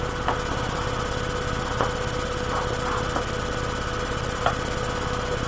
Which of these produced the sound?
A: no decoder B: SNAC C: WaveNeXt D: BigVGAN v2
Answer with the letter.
A